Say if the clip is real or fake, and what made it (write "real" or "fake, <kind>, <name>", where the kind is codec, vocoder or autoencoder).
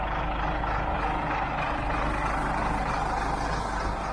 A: real